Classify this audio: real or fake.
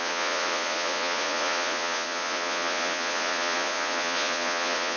fake